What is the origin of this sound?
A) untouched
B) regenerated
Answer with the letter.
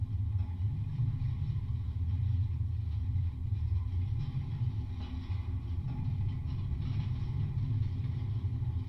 A